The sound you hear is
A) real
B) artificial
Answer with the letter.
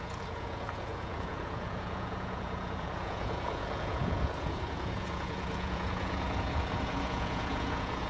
B